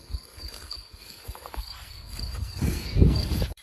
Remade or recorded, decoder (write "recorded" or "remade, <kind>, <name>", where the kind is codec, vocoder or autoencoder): remade, codec, SNAC